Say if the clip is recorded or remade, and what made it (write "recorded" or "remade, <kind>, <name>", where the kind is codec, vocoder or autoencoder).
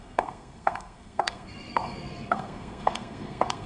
remade, codec, SNAC